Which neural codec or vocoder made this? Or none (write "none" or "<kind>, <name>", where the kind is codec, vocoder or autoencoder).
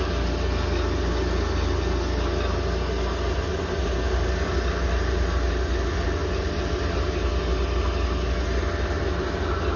none